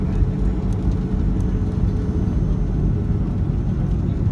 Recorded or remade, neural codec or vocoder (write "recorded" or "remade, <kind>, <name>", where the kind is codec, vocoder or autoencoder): recorded